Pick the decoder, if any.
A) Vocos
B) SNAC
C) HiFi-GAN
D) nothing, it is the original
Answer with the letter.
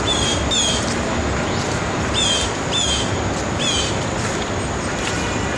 D